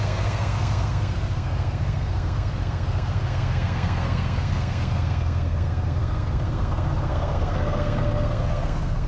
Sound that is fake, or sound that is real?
fake